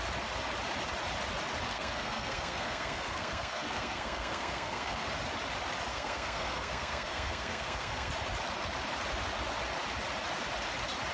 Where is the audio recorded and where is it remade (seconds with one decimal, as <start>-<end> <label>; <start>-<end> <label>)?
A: 0.0-1.7 recorded; 1.7-5.1 remade; 5.1-5.9 recorded; 5.9-8.1 remade; 8.1-11.1 recorded